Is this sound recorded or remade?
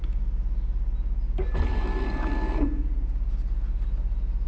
recorded